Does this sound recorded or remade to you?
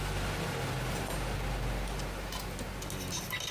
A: recorded